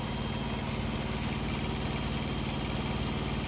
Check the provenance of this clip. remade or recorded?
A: recorded